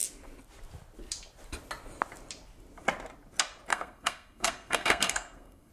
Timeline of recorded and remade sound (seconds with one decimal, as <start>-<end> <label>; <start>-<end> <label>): 0.0-3.7 recorded; 3.7-5.7 remade